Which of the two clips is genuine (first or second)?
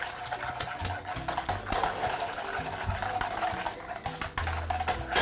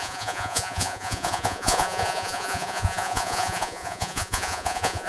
first